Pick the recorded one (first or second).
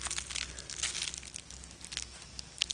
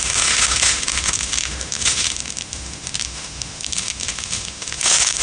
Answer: first